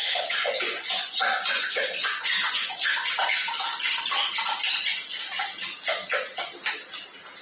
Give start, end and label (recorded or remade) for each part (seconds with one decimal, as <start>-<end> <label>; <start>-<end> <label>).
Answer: 0.0-3.1 remade; 3.1-7.4 recorded